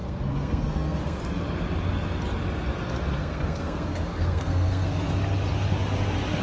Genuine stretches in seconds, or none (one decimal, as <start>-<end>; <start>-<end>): 1.2-3.2; 5.0-6.4